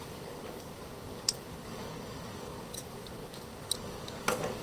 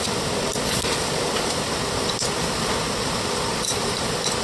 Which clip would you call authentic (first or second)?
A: second